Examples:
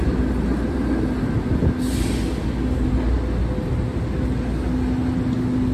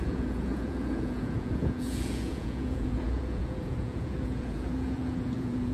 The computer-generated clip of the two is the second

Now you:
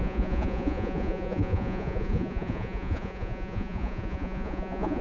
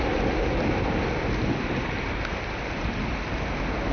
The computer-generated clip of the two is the first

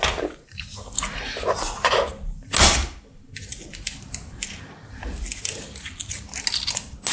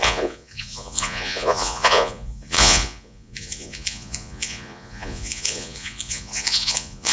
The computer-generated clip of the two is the second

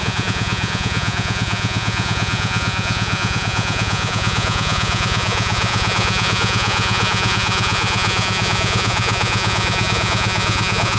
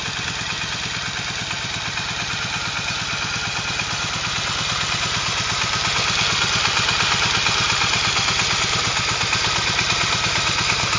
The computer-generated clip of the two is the first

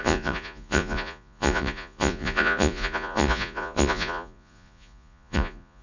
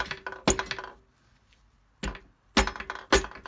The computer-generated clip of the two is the first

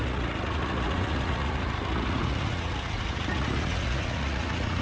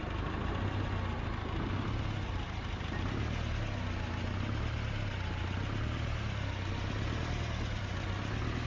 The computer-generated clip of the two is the first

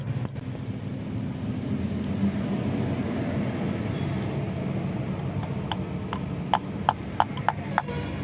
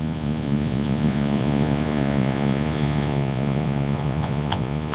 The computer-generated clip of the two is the second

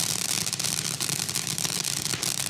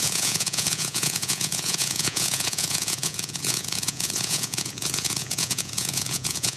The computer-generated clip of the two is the second